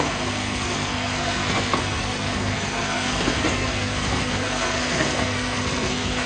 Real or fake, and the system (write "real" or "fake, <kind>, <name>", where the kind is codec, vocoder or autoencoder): fake, codec, SNAC